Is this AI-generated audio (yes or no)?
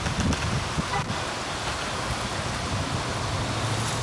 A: no